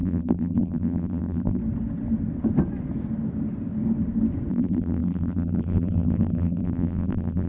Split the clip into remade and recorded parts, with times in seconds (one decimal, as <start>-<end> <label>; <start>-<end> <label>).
0.0-1.6 remade; 1.6-4.5 recorded; 4.5-7.5 remade